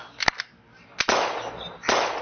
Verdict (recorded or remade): recorded